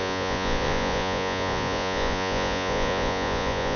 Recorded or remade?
remade